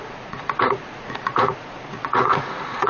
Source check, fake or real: fake